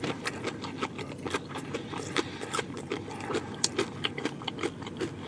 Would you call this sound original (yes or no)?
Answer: yes